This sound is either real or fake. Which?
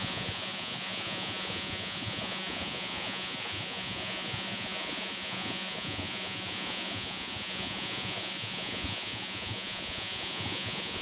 fake